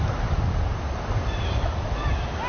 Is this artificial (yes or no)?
no